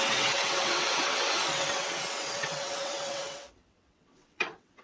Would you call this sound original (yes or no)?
no